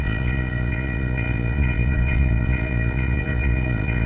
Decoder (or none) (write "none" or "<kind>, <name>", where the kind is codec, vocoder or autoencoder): vocoder, Vocos